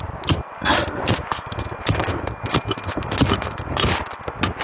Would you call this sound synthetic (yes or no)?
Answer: no